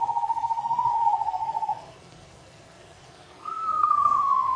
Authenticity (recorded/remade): remade